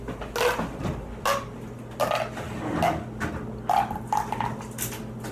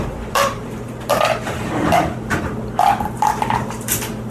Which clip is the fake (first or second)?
second